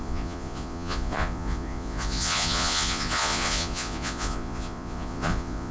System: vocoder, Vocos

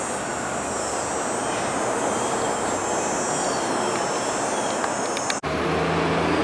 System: none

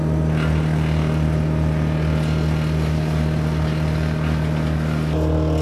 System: none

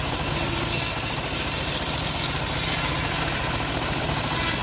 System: none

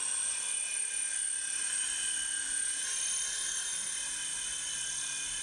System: none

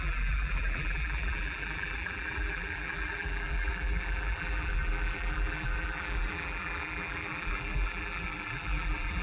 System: vocoder, BigVGAN v2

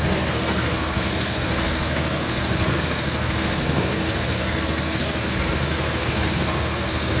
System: codec, SNAC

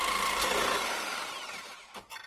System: vocoder, BigVGAN v2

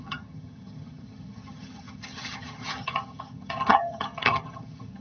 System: vocoder, HiFi-GAN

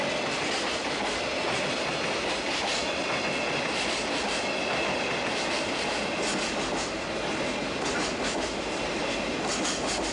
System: none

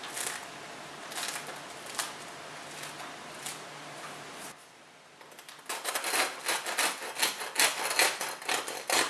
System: none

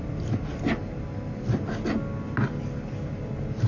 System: none